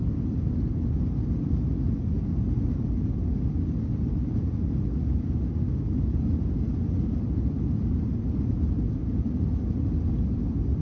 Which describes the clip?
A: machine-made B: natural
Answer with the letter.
B